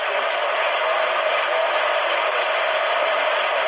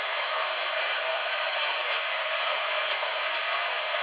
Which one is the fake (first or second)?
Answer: second